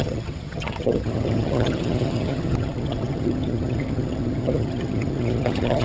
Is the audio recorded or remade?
remade